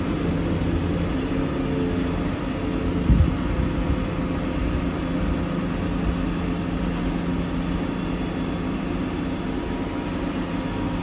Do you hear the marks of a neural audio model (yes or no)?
no